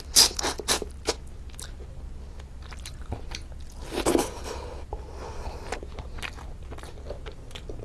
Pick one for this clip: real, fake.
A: real